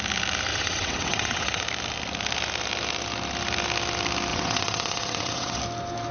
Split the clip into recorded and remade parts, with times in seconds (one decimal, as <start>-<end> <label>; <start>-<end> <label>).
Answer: 0.0-0.5 recorded; 0.5-1.6 remade; 1.6-4.3 recorded; 4.3-5.6 remade; 5.6-6.1 recorded